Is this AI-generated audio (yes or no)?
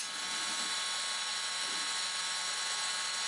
no